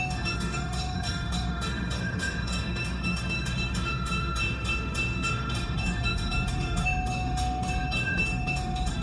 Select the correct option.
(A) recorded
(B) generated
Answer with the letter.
B